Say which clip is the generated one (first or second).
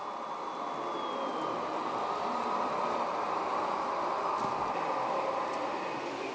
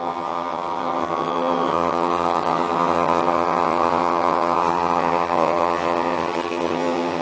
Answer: second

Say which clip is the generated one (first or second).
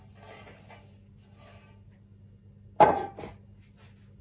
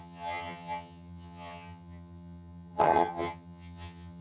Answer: second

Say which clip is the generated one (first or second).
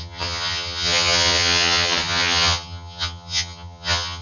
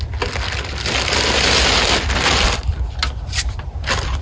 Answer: first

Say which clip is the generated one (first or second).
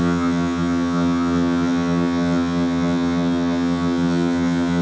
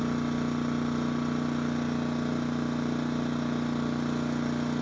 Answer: first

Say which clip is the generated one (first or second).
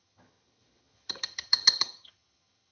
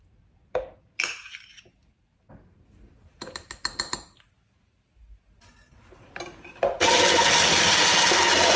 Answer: first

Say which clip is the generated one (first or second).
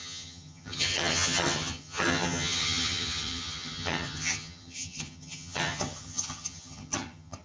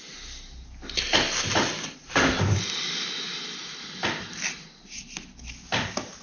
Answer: first